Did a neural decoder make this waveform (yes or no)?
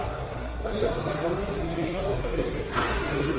yes